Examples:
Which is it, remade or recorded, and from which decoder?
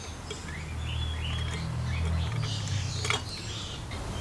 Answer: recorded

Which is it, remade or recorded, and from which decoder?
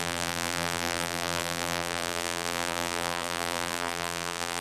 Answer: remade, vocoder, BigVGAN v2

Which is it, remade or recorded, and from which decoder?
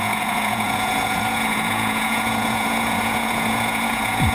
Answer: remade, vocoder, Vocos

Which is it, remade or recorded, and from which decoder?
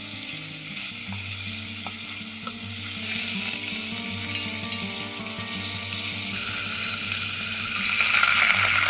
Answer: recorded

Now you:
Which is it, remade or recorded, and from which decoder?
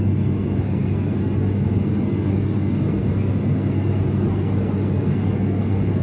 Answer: remade, codec, SNAC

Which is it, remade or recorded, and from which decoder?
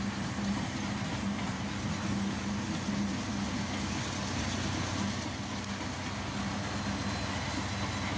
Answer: recorded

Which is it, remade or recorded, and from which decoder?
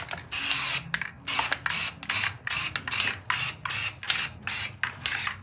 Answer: recorded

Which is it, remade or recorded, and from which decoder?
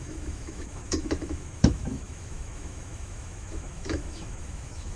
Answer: remade, autoencoder, DAC-VAE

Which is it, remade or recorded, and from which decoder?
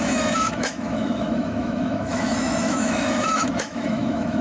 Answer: remade, autoencoder, DAC-VAE